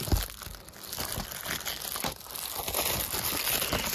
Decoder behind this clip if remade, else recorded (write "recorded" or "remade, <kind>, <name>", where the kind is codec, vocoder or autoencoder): recorded